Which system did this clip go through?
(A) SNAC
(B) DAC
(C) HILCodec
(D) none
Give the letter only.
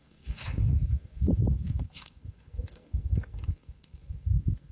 A